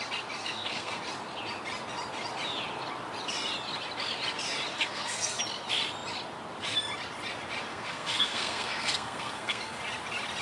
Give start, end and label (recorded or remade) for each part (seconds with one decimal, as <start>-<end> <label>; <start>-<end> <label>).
0.0-0.4 recorded; 0.4-1.0 remade; 1.0-4.7 recorded; 4.7-5.4 remade; 5.4-7.7 recorded; 7.7-9.8 remade; 9.8-10.4 recorded

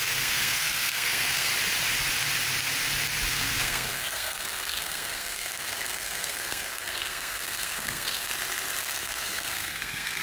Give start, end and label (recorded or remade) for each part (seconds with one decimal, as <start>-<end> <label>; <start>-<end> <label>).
0.0-1.5 remade; 1.5-3.3 recorded; 3.3-8.3 remade; 8.3-8.8 recorded; 8.8-10.2 remade

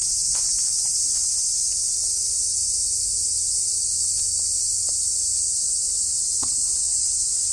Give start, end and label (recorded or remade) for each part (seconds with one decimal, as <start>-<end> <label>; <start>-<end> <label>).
0.0-7.5 recorded

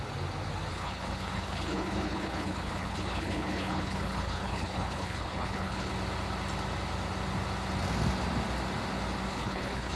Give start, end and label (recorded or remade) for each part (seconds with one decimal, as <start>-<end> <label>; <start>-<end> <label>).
0.0-0.7 recorded; 0.7-5.9 remade; 5.9-9.3 recorded; 9.3-10.0 remade

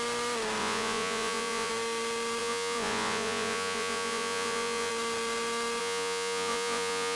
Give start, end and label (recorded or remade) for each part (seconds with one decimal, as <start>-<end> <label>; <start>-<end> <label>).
0.0-0.6 recorded; 0.6-1.7 remade; 1.7-2.4 recorded; 2.4-4.9 remade; 4.9-5.8 recorded; 5.8-7.2 remade